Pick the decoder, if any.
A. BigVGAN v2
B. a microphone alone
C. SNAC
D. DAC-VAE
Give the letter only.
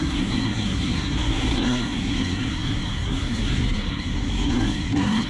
C